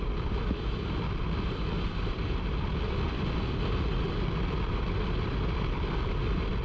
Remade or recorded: recorded